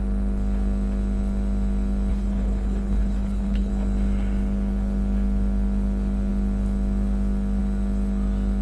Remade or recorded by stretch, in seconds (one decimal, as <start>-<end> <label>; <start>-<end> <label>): 0.0-2.1 recorded; 2.1-3.7 remade; 3.7-8.6 recorded